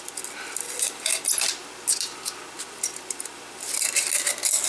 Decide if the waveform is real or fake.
real